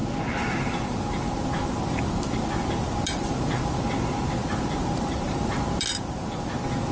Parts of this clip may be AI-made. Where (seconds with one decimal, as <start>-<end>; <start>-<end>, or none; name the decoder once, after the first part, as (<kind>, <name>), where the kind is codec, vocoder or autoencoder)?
none